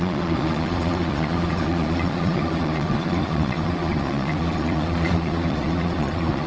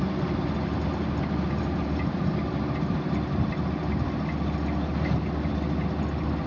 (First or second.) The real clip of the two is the second